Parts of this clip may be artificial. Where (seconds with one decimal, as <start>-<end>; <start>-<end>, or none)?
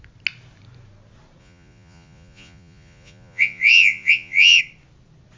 1.4-4.6